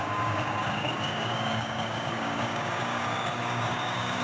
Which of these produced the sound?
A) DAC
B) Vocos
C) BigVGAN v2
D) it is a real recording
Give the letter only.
A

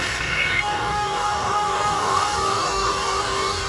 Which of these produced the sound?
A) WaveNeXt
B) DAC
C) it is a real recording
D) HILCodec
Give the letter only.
B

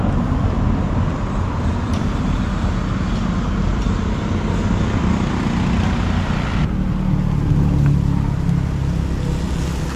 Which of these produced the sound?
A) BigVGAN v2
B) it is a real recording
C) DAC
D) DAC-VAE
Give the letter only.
B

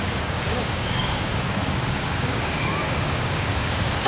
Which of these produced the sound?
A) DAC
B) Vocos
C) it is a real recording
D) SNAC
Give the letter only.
A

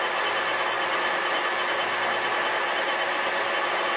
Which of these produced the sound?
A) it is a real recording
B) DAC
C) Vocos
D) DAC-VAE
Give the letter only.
A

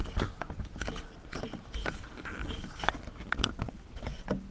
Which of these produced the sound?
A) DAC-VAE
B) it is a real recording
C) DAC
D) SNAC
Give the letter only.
B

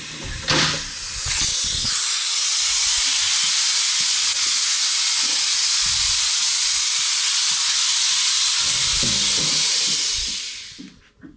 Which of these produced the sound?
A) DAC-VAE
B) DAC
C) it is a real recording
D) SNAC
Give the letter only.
C